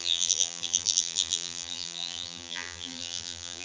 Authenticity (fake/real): fake